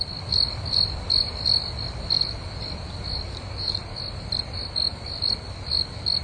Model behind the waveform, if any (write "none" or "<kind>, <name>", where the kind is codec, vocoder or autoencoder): none